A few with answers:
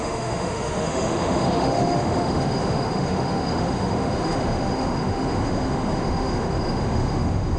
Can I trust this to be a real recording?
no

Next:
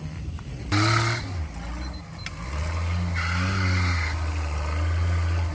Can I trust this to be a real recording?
yes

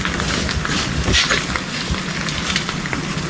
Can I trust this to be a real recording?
no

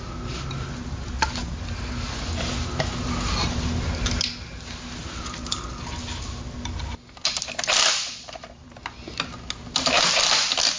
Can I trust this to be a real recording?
yes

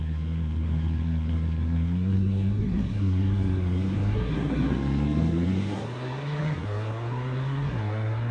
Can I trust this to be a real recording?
no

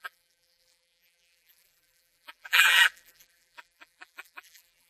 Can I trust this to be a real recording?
no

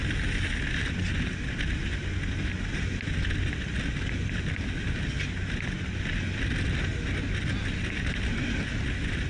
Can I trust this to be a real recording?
yes